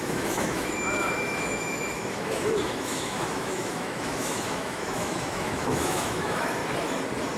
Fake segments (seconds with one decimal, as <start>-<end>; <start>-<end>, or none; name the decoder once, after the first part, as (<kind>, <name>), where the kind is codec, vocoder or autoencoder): 0.0-6.6 (autoencoder, DAC-VAE)